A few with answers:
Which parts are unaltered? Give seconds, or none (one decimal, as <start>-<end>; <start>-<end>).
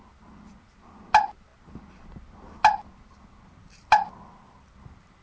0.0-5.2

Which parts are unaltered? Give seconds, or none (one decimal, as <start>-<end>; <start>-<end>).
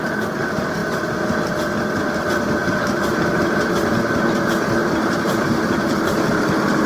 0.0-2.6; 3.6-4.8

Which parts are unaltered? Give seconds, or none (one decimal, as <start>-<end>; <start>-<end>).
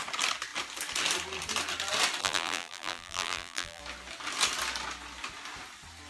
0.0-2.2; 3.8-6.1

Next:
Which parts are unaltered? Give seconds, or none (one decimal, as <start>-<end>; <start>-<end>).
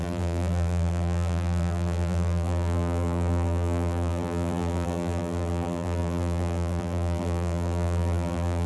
none